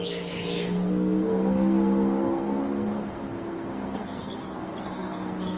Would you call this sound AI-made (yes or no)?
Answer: yes